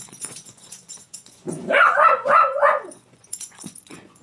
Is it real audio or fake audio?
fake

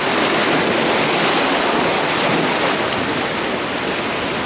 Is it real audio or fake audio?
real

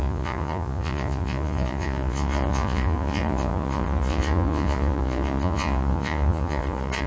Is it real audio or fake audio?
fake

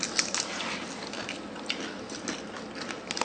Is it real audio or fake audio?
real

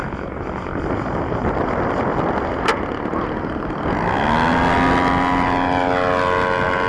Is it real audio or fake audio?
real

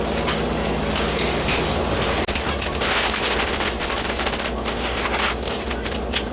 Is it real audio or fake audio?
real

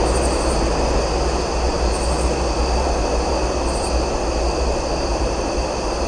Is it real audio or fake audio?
real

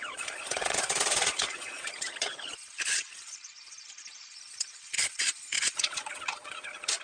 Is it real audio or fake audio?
fake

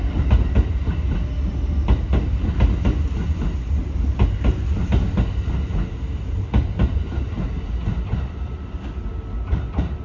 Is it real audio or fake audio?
real